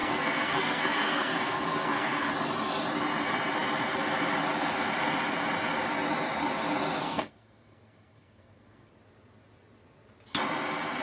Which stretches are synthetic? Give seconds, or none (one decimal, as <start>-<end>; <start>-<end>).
0.0-2.3; 7.0-8.9

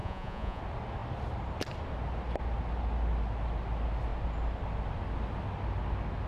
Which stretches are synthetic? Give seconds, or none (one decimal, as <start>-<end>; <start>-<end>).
0.0-0.6

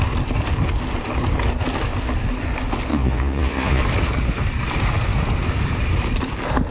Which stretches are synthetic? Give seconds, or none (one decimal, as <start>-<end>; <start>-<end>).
2.9-3.8

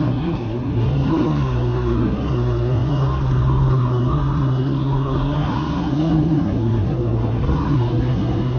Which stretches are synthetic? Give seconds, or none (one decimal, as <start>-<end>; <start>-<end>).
0.0-8.6

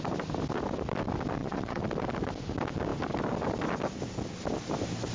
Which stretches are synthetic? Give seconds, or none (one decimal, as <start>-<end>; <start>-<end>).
1.4-1.9

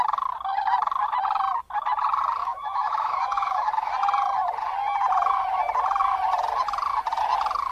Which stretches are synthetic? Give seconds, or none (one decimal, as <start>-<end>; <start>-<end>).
2.4-3.9

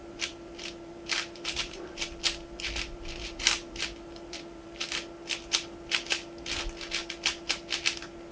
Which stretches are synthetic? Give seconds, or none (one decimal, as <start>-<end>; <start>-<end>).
0.0-4.8

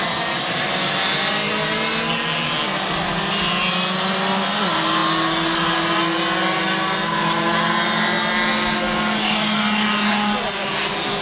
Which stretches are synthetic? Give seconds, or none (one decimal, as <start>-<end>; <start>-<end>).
none